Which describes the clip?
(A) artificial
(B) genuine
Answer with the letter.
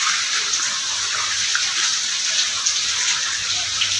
B